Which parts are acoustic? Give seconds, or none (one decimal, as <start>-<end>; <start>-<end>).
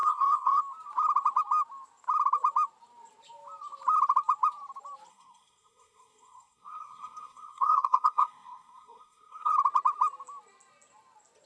0.6-5.1; 9.5-11.5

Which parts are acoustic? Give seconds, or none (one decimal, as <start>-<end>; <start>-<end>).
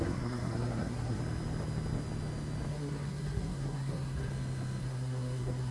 1.2-2.7; 4.3-4.8